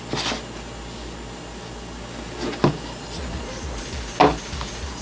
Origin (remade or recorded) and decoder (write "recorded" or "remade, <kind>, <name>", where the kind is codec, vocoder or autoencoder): recorded